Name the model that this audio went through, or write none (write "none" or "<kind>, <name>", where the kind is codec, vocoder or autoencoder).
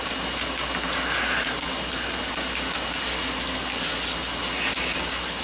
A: none